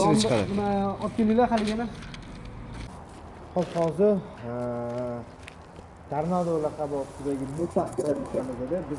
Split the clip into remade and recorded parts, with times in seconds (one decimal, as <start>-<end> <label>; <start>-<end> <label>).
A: 0.0-7.6 recorded; 7.6-8.4 remade; 8.4-9.0 recorded